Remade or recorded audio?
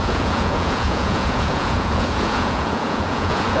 remade